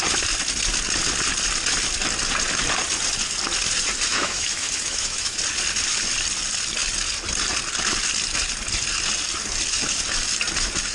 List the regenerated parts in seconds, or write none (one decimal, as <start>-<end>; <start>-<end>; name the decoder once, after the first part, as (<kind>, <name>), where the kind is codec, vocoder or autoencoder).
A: 4.1-5.4 (autoencoder, DAC-VAE)